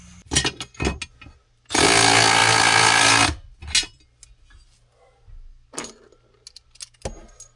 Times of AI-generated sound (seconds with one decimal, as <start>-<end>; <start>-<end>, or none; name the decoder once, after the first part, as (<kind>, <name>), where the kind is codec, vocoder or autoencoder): 2.4-3.0 (vocoder, BigVGAN v2)